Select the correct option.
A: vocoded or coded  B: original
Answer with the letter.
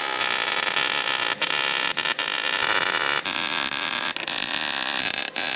B